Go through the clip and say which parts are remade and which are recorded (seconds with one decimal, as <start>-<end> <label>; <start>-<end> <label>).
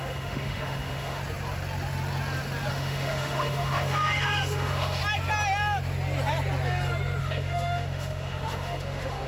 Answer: 0.0-1.2 remade; 1.2-2.7 recorded; 2.7-5.0 remade; 5.0-7.2 recorded; 7.2-9.3 remade